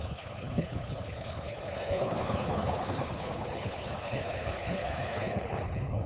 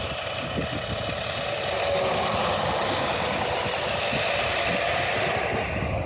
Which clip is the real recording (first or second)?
second